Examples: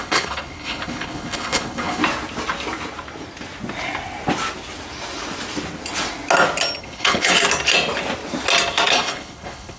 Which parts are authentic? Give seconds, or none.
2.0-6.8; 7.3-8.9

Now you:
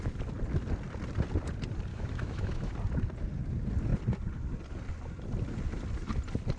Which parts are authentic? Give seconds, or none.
0.0-1.9; 2.7-6.6

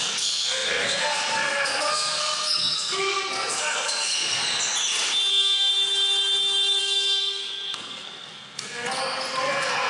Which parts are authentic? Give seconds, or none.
4.4-5.3; 5.7-6.8; 9.0-9.5

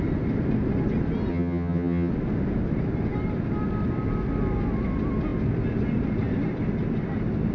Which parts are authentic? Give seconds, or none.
0.0-1.3; 2.1-7.5

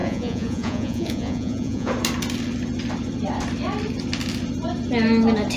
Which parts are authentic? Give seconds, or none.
1.9-5.6

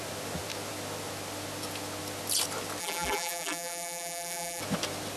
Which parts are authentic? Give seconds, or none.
0.0-2.8; 4.6-5.2